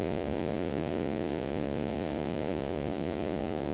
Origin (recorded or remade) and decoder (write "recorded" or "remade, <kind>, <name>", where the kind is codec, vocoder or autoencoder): remade, vocoder, Vocos